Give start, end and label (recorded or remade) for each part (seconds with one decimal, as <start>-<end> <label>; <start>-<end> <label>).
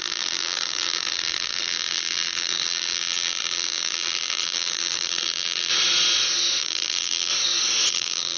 0.0-5.7 remade; 5.7-6.6 recorded; 6.6-7.3 remade; 7.3-7.9 recorded; 7.9-8.4 remade